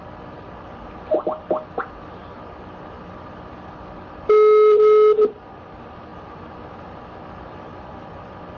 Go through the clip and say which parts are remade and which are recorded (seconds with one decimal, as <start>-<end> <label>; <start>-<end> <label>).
0.0-8.6 recorded